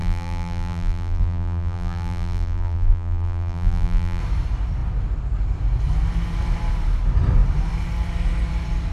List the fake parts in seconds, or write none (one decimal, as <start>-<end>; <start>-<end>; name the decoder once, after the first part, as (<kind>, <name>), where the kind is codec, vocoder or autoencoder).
0.0-4.2 (vocoder, BigVGAN v2)